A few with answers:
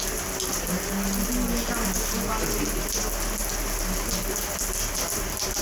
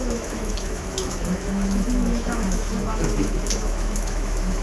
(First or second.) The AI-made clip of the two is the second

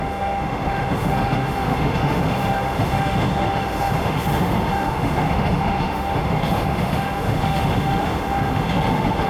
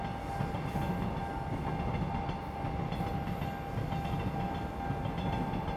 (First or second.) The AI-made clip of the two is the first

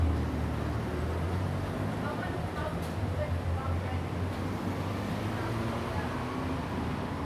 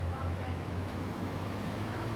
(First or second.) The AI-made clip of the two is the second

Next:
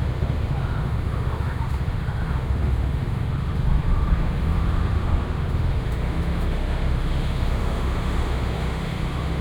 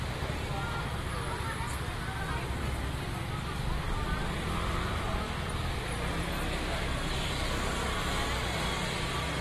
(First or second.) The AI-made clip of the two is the first